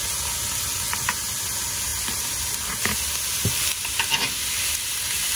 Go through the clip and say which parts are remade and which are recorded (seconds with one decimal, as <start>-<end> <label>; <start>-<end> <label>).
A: 0.0-5.4 recorded